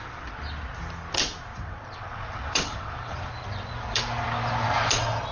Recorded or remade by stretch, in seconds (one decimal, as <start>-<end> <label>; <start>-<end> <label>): 0.0-1.5 recorded; 1.5-3.3 remade; 3.3-5.3 recorded